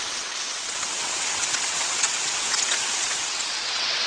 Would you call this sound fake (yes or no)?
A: yes